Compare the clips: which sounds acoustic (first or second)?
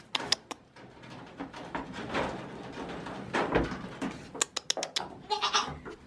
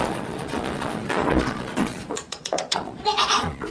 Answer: first